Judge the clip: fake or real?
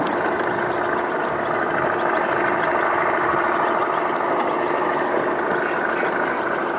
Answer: real